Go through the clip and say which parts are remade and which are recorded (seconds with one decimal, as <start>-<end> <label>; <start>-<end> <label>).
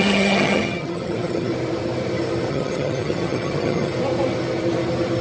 0.0-1.5 remade; 1.5-2.5 recorded; 2.5-3.9 remade; 3.9-5.2 recorded